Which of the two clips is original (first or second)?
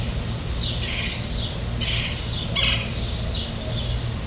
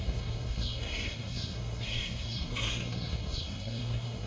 first